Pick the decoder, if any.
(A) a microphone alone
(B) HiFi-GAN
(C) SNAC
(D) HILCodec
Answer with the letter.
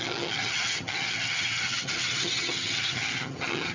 B